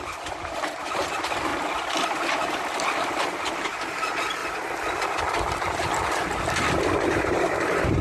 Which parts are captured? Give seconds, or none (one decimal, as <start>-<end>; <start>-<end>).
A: 1.5-3.5; 4.4-7.1